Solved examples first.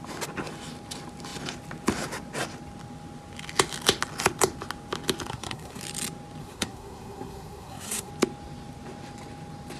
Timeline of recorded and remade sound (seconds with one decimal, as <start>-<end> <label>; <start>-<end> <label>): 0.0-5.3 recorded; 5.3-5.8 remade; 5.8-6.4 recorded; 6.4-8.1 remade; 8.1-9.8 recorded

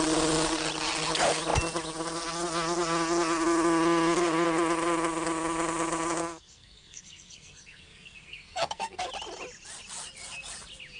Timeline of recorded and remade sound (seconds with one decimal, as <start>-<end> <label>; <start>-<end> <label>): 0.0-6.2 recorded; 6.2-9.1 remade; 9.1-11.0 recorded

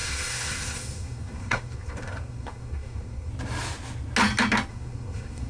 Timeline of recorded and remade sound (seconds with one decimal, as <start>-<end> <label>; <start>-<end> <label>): 0.0-3.3 remade; 3.3-4.7 recorded; 4.7-5.5 remade

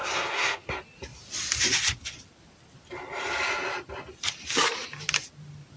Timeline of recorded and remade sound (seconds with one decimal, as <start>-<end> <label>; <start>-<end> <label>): 0.0-0.7 remade; 0.7-5.8 recorded

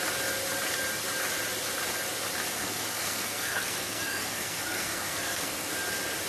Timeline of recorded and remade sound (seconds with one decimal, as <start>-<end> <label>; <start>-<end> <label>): 0.0-2.5 recorded; 2.5-5.7 remade; 5.7-6.3 recorded

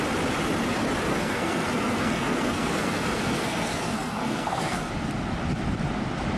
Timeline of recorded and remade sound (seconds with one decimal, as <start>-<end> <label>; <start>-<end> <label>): 0.0-1.1 recorded; 1.1-4.9 remade; 4.9-6.4 recorded

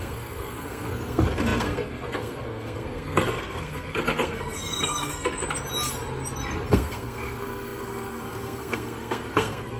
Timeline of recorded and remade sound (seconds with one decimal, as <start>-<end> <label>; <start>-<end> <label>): 0.0-5.4 remade; 5.4-6.7 recorded; 6.7-9.8 remade